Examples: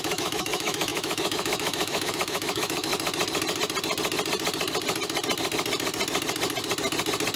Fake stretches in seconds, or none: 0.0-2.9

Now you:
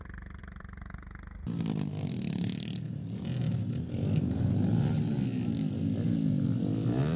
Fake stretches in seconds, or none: none

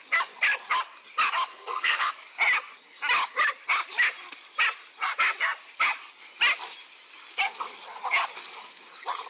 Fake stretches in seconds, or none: 1.5-2.1